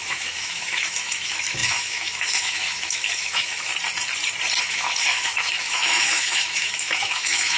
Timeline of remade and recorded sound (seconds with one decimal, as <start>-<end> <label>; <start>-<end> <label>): 0.0-3.7 remade; 3.7-4.6 recorded; 4.6-7.6 remade